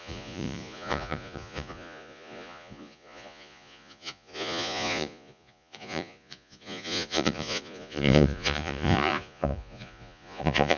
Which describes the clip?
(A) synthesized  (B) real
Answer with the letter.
A